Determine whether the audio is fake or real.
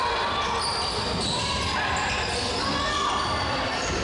real